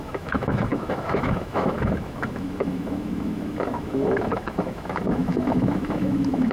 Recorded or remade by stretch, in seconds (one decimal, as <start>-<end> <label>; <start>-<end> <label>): 0.0-6.5 remade